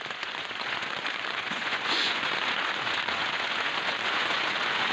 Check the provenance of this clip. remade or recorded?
remade